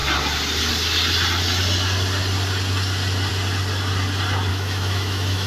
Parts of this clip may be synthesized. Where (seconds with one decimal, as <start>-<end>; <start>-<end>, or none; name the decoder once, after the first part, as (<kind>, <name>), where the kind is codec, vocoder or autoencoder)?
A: 4.5-5.5 (autoencoder, DAC-VAE)